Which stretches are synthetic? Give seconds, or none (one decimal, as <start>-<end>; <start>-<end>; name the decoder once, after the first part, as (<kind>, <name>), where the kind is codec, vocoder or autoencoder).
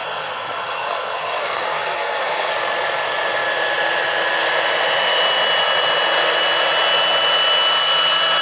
0.0-2.5 (codec, SNAC)